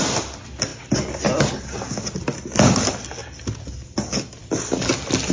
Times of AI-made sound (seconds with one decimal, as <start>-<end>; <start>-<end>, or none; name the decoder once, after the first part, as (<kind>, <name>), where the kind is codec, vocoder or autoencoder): none